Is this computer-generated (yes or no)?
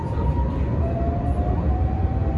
no